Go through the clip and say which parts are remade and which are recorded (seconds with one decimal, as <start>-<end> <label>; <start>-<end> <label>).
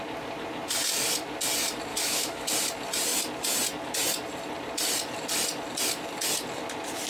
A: 0.0-1.9 recorded; 1.9-2.5 remade; 2.5-7.1 recorded